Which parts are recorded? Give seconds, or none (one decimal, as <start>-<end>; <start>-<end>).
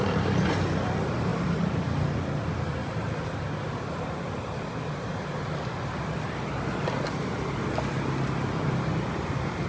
0.0-9.7